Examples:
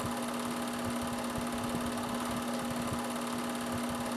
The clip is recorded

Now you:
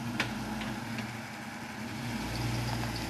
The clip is recorded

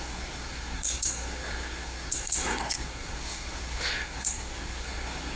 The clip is remade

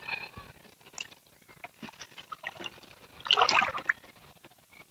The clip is recorded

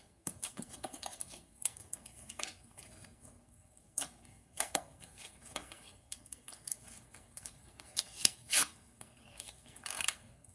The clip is remade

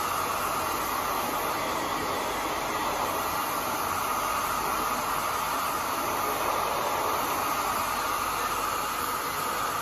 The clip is recorded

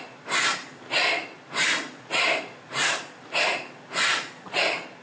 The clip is recorded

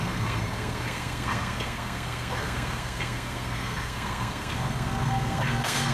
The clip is remade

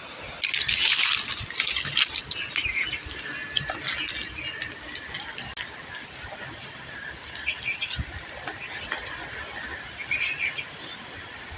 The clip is recorded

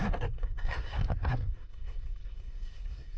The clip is remade